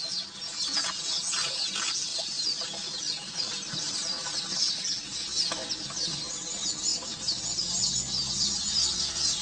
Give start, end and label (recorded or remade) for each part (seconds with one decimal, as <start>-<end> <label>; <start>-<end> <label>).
0.0-2.1 recorded; 2.1-4.5 remade; 4.5-6.9 recorded; 6.9-7.7 remade; 7.7-9.4 recorded